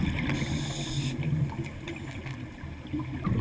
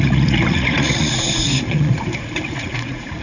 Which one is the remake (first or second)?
second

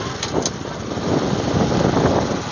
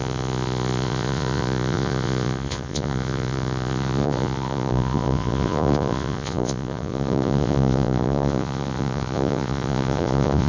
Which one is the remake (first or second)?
second